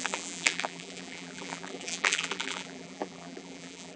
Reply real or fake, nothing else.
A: fake